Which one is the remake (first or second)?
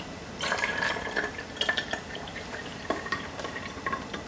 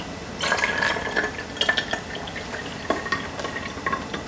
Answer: first